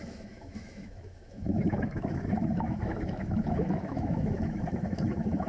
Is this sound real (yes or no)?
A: no